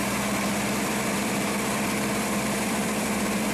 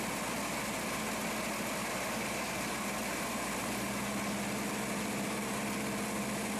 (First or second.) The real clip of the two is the second